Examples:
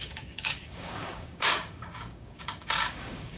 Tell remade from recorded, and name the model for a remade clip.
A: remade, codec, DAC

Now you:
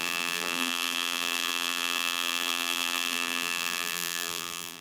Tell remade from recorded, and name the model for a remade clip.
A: remade, vocoder, BigVGAN v2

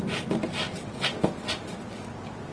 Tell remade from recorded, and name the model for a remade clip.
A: recorded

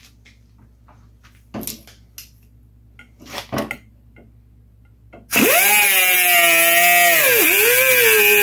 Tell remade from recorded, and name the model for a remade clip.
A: recorded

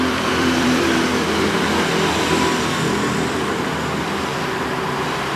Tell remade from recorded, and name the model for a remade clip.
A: remade, vocoder, BigVGAN v2